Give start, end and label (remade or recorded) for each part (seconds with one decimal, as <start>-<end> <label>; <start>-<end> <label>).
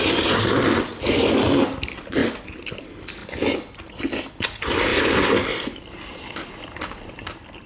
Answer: 0.0-7.7 recorded